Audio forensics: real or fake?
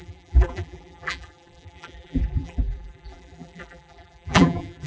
fake